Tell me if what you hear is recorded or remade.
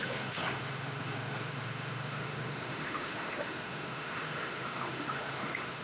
remade